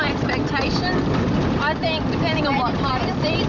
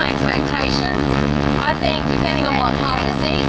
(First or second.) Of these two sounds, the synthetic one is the second